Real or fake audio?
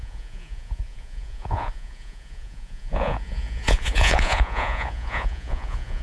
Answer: fake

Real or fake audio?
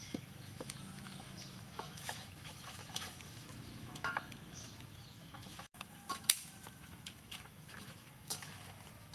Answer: fake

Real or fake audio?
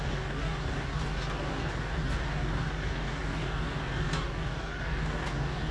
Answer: fake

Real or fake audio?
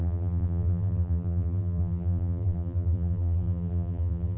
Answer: fake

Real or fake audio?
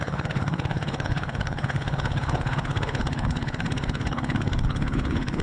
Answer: fake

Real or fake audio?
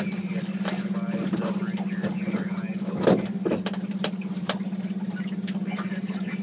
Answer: fake